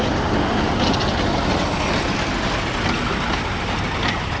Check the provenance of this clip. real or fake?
real